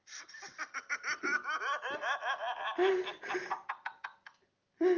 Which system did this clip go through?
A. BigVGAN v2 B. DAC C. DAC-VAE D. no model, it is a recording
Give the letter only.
D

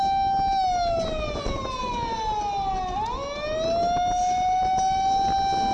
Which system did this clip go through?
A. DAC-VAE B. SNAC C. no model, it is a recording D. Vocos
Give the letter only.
C